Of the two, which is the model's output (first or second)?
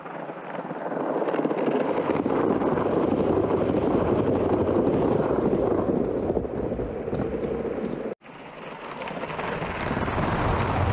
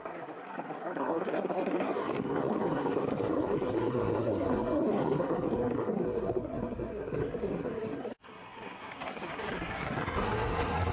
second